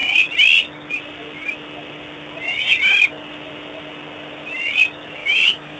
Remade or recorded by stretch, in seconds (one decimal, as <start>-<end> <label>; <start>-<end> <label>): 0.0-5.2 recorded; 5.2-5.8 remade